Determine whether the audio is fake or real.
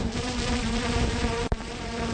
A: fake